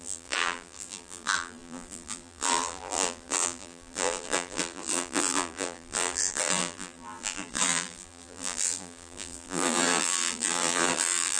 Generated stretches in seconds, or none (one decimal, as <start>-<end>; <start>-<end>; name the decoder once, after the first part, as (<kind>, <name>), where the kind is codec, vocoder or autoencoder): 0.0-11.4 (vocoder, BigVGAN v2)